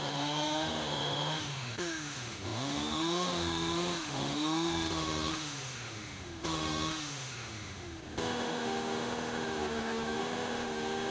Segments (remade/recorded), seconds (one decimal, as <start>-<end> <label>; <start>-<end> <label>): 0.0-11.1 remade